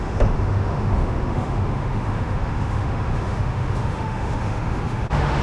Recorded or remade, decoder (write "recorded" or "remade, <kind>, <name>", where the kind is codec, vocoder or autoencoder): remade, autoencoder, DAC-VAE